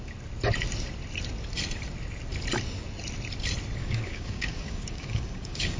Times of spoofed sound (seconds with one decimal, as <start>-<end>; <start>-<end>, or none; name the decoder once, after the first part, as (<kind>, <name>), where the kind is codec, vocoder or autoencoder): 3.8-5.8 (codec, DAC)

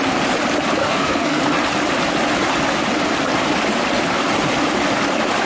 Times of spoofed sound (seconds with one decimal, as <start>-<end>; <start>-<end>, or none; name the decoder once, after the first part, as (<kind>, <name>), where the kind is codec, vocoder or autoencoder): 0.8-1.4 (codec, SNAC)

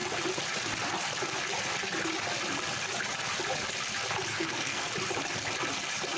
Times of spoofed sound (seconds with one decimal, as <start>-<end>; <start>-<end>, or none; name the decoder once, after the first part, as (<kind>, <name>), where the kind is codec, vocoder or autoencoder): 4.3-4.9 (codec, SNAC)

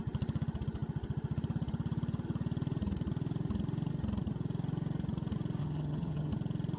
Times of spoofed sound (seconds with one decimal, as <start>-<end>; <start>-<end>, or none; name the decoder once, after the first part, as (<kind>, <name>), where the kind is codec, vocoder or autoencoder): 5.6-6.3 (vocoder, HiFi-GAN)

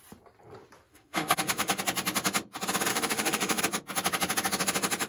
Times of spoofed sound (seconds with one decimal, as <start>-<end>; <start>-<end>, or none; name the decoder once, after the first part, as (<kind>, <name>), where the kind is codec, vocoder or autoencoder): 0.9-1.8 (autoencoder, DAC-VAE); 2.9-3.6

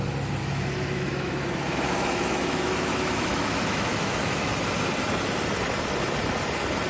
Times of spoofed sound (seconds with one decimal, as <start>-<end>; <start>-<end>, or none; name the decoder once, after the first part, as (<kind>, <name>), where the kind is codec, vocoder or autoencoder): 0.4-4.5 (autoencoder, DAC-VAE)